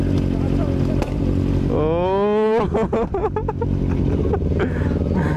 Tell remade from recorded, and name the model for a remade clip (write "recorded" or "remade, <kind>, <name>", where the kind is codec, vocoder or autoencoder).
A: recorded